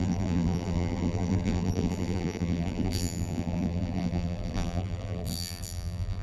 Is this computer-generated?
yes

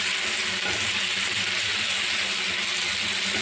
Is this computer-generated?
no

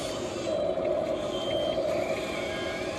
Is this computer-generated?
no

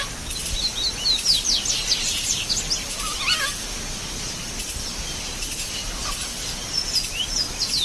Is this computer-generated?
no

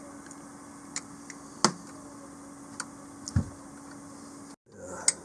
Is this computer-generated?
no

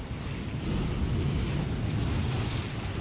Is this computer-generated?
no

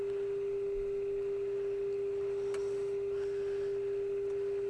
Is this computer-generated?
no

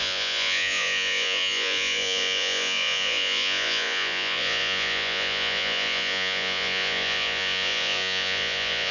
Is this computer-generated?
yes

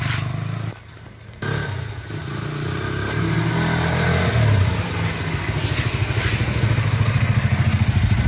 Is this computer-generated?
no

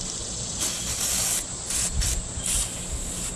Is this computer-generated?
no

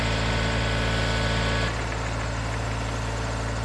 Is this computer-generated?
no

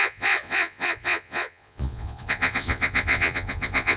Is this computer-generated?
yes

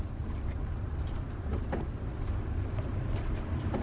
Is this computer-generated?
yes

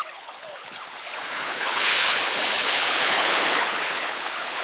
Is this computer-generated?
yes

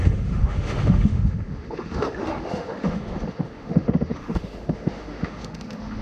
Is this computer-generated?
yes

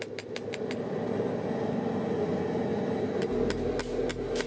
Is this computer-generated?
no